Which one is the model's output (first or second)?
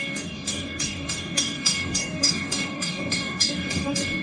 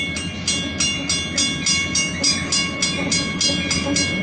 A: first